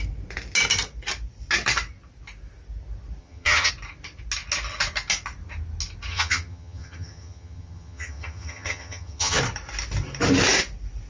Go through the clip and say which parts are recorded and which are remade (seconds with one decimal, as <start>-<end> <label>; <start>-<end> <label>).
0.0-3.2 recorded; 3.2-3.7 remade; 3.7-6.1 recorded; 6.1-9.4 remade; 9.4-11.1 recorded